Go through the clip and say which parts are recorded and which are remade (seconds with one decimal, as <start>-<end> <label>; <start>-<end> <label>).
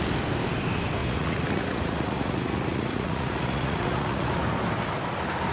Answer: 0.0-1.0 recorded; 1.0-4.3 remade; 4.3-5.5 recorded